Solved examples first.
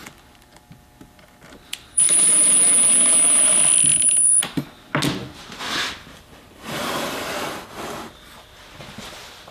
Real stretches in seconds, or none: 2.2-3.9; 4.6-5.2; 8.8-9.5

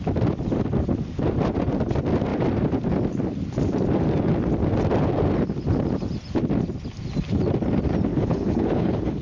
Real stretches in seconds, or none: 0.0-8.1

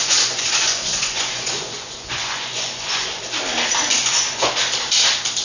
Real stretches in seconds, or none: 3.2-3.9; 4.5-5.4

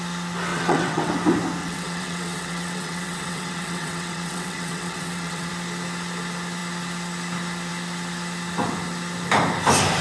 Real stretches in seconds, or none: 0.0-0.5; 1.1-1.6; 5.5-10.0

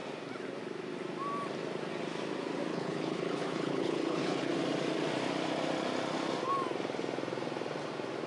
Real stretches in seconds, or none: 0.0-2.7; 4.5-8.3